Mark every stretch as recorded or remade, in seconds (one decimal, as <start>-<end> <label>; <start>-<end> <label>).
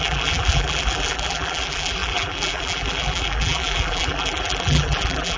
0.0-5.4 remade